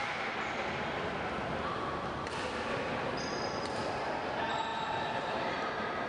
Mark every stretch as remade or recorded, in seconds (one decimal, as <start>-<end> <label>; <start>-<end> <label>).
0.0-1.1 remade; 1.1-4.7 recorded; 4.7-6.1 remade